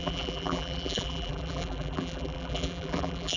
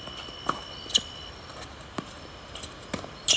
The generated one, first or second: first